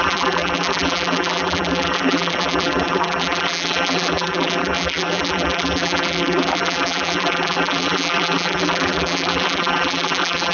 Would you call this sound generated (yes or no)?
yes